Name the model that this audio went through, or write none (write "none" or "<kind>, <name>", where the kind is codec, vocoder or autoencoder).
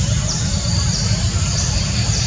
vocoder, BigVGAN v2